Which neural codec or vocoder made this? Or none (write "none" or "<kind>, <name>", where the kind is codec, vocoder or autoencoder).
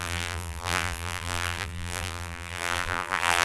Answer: vocoder, BigVGAN v2